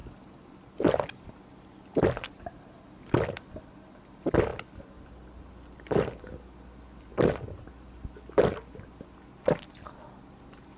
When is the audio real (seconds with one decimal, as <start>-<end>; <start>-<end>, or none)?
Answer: 0.0-10.8